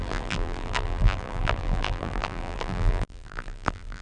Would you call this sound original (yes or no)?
no